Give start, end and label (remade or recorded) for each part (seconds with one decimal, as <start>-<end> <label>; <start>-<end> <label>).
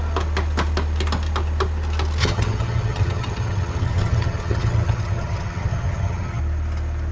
0.0-2.2 recorded; 2.2-6.4 remade; 6.4-7.1 recorded